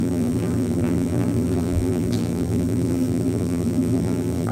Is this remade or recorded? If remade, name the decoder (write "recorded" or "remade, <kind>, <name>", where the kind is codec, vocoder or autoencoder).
remade, vocoder, BigVGAN v2